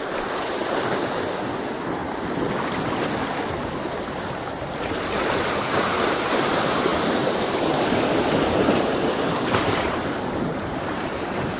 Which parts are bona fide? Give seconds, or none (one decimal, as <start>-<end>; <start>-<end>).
0.0-6.9